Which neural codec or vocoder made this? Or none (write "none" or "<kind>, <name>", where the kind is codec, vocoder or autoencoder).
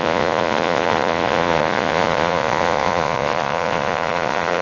vocoder, Vocos